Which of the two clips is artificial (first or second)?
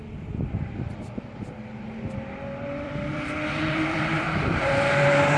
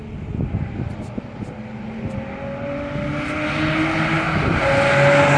first